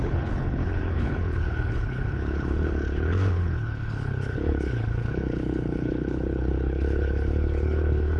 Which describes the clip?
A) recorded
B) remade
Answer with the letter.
B